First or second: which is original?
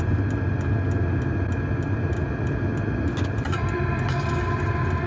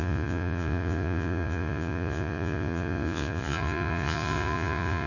first